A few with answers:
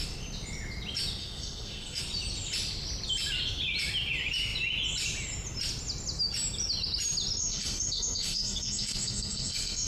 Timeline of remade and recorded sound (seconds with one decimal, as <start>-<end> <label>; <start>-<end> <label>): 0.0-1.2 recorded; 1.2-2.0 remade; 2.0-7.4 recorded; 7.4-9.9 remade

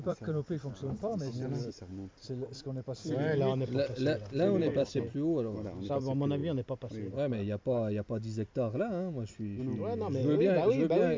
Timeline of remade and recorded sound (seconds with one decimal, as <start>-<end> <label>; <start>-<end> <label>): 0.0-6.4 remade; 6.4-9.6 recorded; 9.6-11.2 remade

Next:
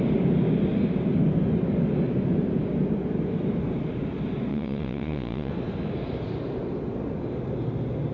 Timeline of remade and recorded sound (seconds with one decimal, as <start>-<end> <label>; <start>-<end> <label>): 0.0-4.5 recorded; 4.5-5.5 remade; 5.5-8.1 recorded

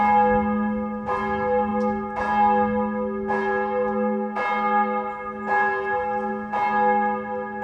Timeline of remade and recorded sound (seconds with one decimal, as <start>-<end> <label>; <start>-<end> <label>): 0.0-7.6 recorded

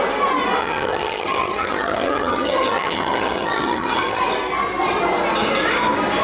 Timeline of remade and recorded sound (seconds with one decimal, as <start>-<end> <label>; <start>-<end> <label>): 0.0-0.6 recorded; 0.6-4.2 remade; 4.2-6.2 recorded

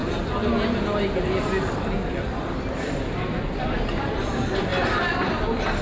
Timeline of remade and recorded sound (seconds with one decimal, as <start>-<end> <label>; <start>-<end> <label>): 0.0-2.9 recorded; 2.9-4.7 remade; 4.7-5.8 recorded

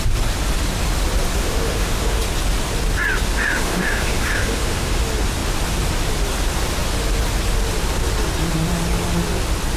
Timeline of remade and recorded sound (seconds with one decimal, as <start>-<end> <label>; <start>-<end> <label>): 0.0-1.4 recorded; 1.4-2.2 remade; 2.2-3.3 recorded; 3.3-5.0 remade; 5.0-9.8 recorded

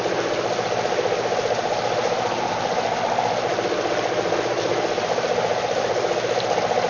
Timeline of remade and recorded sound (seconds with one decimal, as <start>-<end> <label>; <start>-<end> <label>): 0.0-6.9 recorded